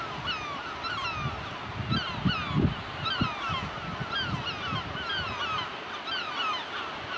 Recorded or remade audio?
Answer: recorded